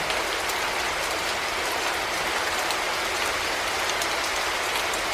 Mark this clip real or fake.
real